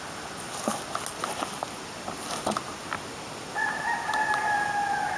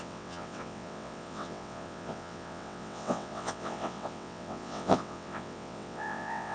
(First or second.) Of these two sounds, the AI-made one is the second